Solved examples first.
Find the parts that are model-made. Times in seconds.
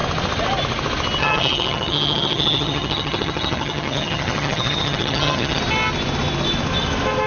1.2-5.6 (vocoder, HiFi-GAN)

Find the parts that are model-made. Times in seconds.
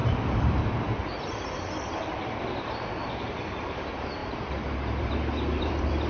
0.0-2.4 (vocoder, BigVGAN v2); 3.0-3.6; 4.2-6.1